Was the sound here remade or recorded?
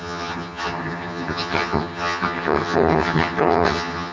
remade